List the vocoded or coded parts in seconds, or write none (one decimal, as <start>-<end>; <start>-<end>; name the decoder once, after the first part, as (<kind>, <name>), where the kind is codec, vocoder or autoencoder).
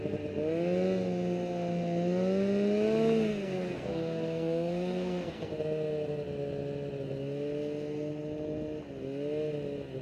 3.3-5.5 (codec, SNAC)